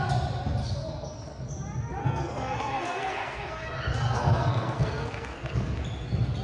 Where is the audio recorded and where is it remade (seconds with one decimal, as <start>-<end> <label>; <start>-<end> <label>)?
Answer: 0.0-0.6 recorded; 0.6-1.5 remade; 1.5-2.0 recorded; 2.0-5.8 remade; 5.8-6.4 recorded